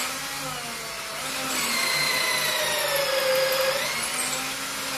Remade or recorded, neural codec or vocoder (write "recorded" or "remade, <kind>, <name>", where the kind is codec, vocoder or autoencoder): recorded